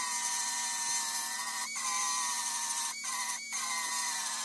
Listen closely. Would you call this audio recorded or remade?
recorded